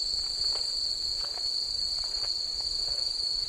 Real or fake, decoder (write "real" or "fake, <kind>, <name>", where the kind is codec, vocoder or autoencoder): real